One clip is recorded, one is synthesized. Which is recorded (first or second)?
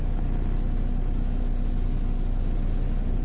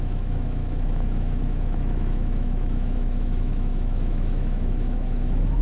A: first